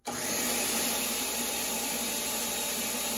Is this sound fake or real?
real